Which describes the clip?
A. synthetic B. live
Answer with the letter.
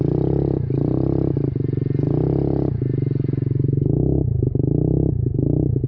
B